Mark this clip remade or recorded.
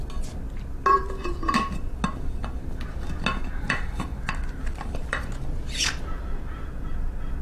recorded